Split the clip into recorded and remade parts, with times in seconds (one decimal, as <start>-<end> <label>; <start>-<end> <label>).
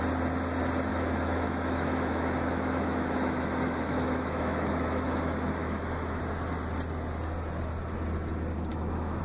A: 0.0-0.9 recorded; 0.9-6.2 remade; 6.2-8.7 recorded; 8.7-9.2 remade